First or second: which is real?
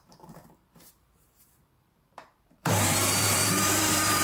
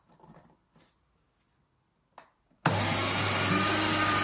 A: second